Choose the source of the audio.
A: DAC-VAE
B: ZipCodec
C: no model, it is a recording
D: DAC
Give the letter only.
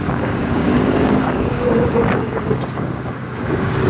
D